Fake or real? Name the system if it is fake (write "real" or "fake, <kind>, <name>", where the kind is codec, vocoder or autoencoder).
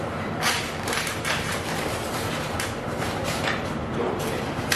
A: fake, vocoder, BigVGAN v2